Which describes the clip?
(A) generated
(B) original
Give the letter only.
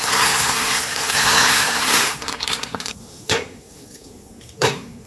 A